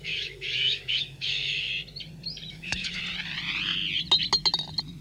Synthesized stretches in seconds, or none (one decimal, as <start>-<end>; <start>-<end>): 0.0-1.7; 2.5-3.0